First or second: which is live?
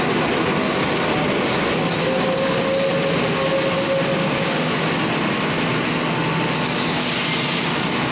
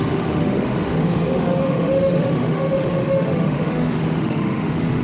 first